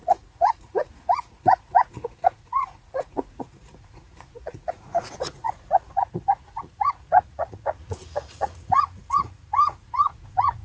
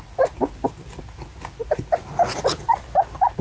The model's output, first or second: first